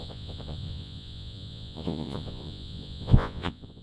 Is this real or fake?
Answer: fake